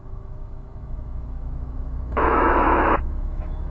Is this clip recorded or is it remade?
remade